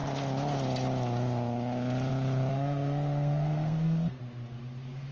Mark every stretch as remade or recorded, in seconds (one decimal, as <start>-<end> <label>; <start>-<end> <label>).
0.0-2.5 recorded; 2.5-4.2 remade; 4.2-5.1 recorded